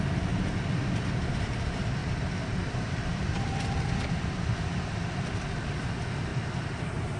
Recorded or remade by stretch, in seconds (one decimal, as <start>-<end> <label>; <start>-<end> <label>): 0.0-2.0 recorded; 2.0-4.7 remade; 4.7-6.3 recorded; 6.3-7.2 remade